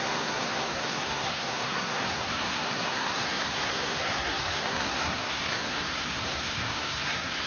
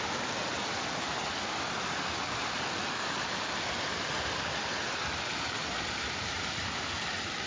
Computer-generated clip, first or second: first